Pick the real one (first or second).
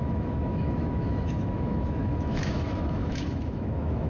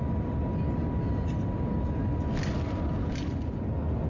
second